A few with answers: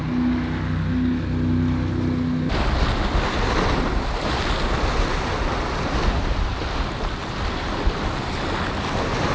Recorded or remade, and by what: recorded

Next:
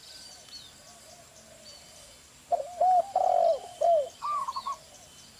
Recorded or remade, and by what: recorded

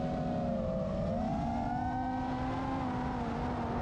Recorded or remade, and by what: recorded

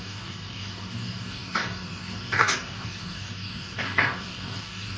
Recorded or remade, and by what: remade, codec, DAC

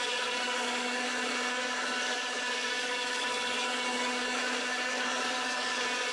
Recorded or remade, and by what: remade, codec, DAC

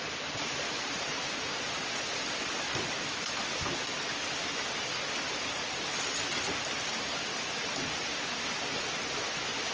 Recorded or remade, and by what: recorded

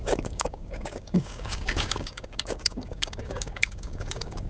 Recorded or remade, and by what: remade, codec, DAC